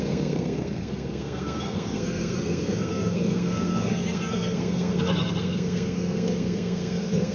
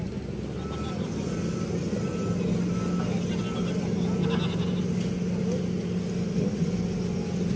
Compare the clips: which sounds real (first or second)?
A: second